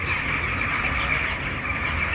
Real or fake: real